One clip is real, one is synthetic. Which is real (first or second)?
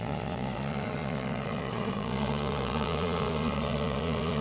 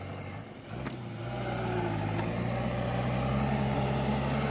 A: second